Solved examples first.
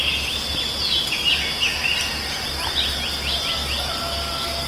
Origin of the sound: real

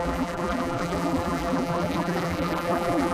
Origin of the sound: fake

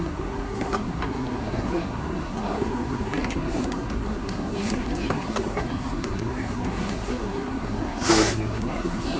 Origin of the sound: fake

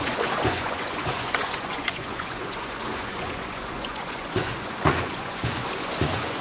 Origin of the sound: fake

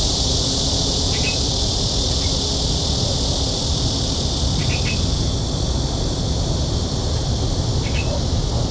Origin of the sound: real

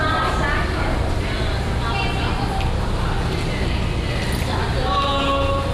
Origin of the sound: real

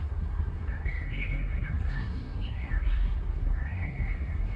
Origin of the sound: fake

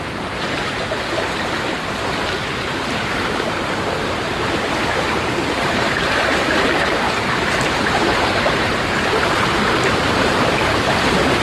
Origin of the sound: fake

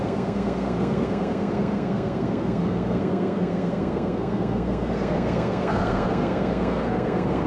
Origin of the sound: fake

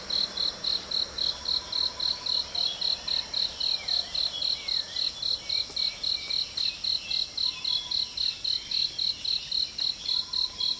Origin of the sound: real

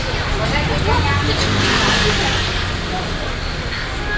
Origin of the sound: real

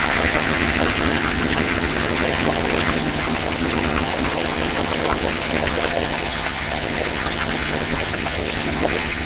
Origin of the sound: fake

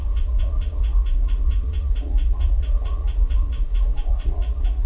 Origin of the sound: fake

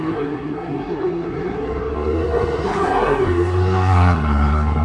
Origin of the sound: fake